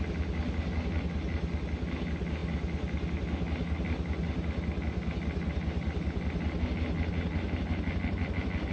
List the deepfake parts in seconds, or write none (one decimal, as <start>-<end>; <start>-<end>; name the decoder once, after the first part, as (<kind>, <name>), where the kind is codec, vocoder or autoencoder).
none